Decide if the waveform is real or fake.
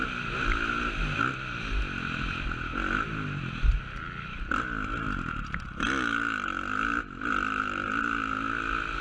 real